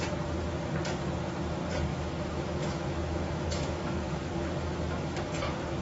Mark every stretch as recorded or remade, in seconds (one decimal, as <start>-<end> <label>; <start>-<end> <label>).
0.0-1.9 recorded; 1.9-5.8 remade